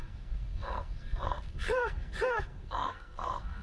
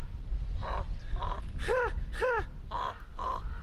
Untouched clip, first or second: second